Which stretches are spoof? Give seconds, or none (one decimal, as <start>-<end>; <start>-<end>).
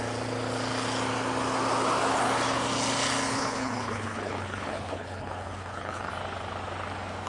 3.3-6.1